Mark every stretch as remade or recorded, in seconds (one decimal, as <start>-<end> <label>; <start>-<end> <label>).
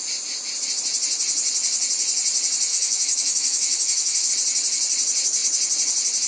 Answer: 0.0-2.7 recorded; 2.7-4.3 remade; 4.3-6.3 recorded